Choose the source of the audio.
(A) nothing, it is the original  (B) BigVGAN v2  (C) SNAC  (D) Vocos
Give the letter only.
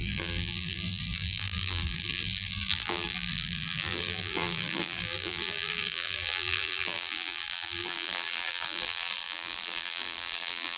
B